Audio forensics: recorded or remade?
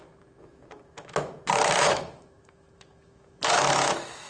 remade